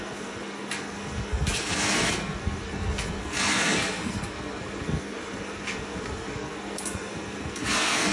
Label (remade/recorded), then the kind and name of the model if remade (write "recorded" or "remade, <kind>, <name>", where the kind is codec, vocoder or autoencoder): remade, codec, SNAC